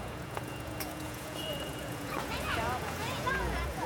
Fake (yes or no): yes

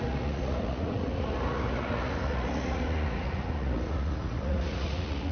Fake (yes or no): yes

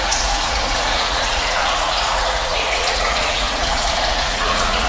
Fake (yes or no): yes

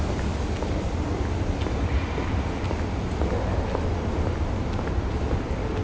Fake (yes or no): no